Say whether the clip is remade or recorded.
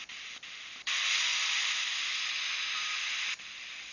recorded